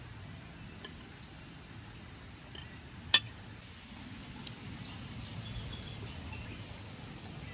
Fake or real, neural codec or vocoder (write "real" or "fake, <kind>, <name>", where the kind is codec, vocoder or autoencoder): real